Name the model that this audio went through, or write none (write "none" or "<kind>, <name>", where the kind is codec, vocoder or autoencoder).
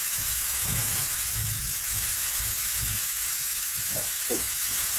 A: autoencoder, DAC-VAE